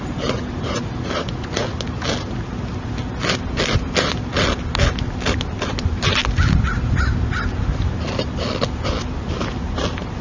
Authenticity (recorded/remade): recorded